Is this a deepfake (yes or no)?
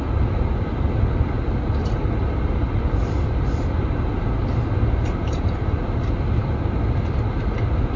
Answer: no